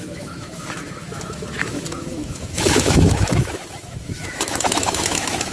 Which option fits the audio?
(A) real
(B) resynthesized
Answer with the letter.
B